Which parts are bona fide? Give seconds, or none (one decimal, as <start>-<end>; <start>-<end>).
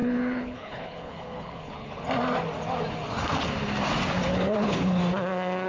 2.0-4.3; 5.0-5.7